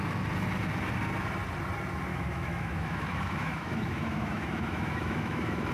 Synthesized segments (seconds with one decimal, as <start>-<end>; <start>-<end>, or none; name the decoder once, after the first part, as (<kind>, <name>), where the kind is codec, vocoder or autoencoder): 2.1-5.7 (autoencoder, DAC-VAE)